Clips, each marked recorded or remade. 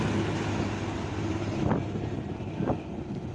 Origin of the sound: recorded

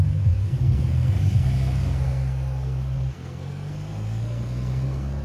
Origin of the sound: remade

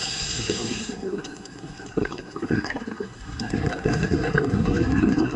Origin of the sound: remade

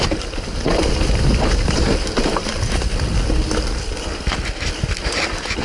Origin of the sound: recorded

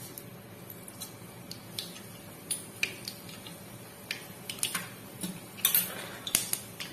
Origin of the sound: recorded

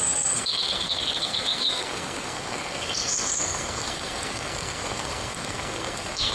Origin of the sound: remade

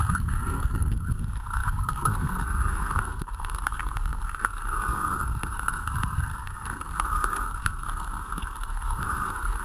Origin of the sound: remade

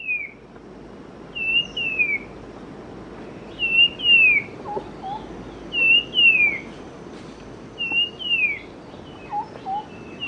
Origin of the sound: recorded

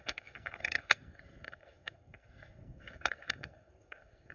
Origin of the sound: remade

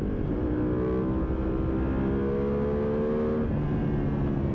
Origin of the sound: recorded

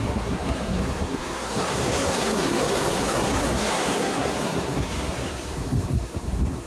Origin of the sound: remade